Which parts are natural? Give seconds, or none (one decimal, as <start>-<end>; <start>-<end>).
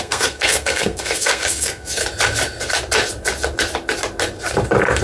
2.0-5.0